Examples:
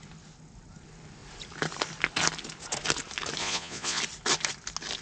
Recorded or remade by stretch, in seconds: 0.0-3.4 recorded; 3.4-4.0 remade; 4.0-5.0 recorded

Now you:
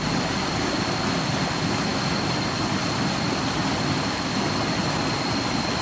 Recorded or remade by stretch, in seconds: 0.0-5.8 recorded

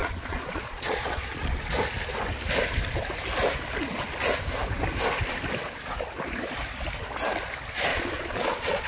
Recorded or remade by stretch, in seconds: 0.0-1.7 remade; 1.7-7.9 recorded; 7.9-8.9 remade

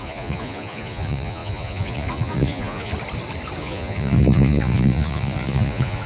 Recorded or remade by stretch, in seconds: 0.0-2.9 remade; 2.9-3.6 recorded; 3.6-6.1 remade

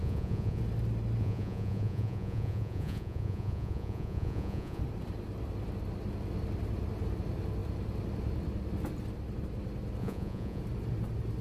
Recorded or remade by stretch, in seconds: 0.0-0.6 remade; 0.6-1.2 recorded; 1.2-4.8 remade; 4.8-10.0 recorded; 10.0-10.6 remade; 10.6-11.4 recorded

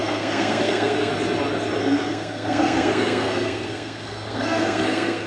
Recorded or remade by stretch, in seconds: 0.0-1.1 remade; 1.1-1.8 recorded; 1.8-5.3 remade

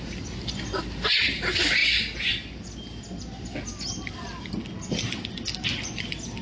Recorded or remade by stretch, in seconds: 0.0-6.4 recorded

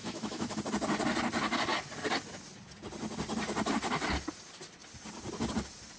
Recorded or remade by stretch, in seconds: 0.0-0.6 remade; 0.6-6.0 recorded